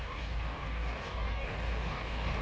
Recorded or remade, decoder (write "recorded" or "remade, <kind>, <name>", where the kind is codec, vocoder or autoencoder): remade, codec, DAC